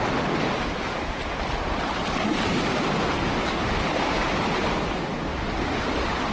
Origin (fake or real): real